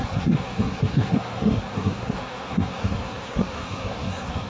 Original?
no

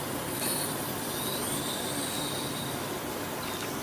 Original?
no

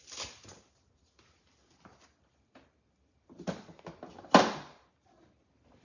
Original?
yes